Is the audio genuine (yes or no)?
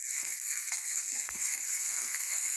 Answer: no